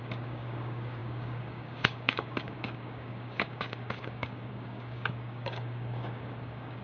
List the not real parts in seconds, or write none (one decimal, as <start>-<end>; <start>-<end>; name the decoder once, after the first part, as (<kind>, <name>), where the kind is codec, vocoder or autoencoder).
0.0-6.8 (codec, DAC)